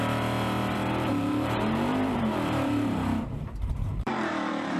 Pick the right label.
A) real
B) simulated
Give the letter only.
B